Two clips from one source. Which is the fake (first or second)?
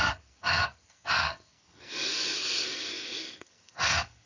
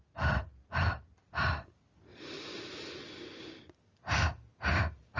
first